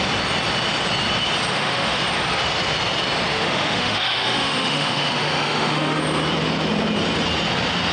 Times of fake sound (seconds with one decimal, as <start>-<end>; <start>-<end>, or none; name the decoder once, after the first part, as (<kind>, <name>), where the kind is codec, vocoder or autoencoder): 1.5-2.0 (autoencoder, DAC-VAE); 3.3-6.0